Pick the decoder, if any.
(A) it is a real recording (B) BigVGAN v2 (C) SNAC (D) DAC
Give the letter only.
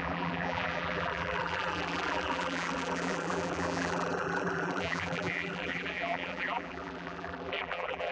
B